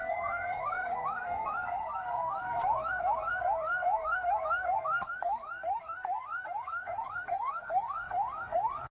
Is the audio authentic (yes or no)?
no